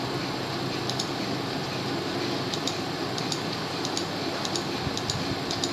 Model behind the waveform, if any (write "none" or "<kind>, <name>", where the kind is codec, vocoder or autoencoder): none